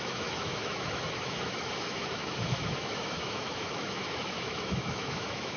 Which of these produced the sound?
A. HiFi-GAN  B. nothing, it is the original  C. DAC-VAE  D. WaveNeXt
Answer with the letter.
C